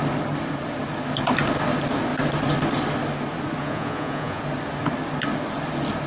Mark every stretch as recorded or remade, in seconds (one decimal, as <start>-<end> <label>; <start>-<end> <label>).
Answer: 0.0-3.6 recorded; 3.6-4.4 remade; 4.4-6.1 recorded